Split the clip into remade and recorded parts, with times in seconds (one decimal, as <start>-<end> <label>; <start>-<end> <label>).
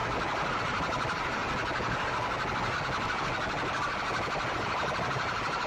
0.0-0.5 recorded; 0.5-1.4 remade; 1.4-4.5 recorded; 4.5-5.7 remade